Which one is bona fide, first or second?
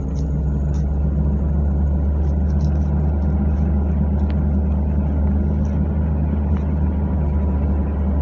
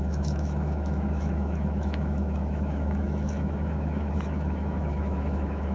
first